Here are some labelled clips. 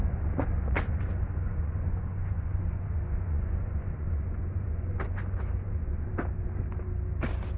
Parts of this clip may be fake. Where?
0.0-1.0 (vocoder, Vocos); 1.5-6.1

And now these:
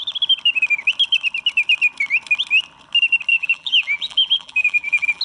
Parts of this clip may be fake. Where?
3.3-5.2 (vocoder, BigVGAN v2)

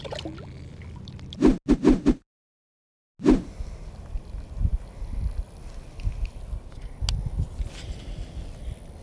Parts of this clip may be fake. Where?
none

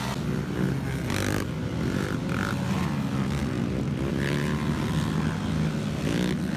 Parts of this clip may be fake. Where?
none

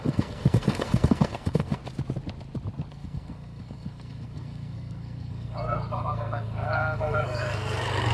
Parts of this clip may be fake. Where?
0.0-1.8 (codec, SNAC); 2.9-8.1